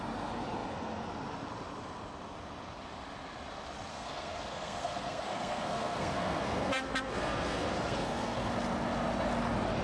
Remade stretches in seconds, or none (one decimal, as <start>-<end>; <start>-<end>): 3.9-8.5